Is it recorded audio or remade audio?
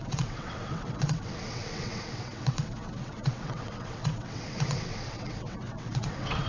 remade